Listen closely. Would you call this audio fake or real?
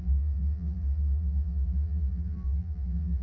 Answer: fake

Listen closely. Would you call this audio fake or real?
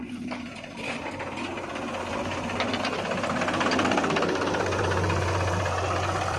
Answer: real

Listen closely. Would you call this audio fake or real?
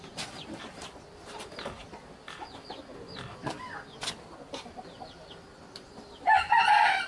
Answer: real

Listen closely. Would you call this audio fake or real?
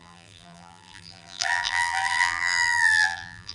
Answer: fake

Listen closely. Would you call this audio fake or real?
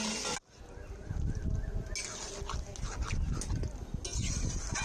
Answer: real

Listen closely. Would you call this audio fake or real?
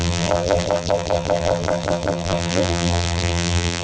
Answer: fake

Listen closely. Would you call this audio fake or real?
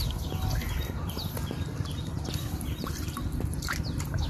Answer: real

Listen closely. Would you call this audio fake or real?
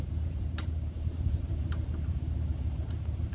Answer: fake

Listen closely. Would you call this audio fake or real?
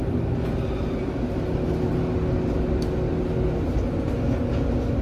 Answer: real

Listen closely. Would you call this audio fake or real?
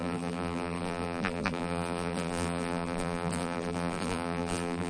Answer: fake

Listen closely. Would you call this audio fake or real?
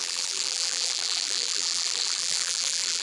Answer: fake